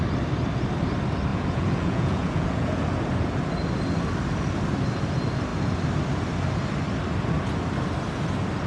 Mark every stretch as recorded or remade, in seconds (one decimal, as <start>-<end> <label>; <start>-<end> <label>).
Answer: 0.0-1.3 recorded; 1.3-2.8 remade; 2.8-8.7 recorded